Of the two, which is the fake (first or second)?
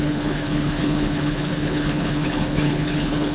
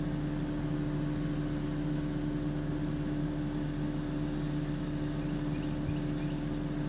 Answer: first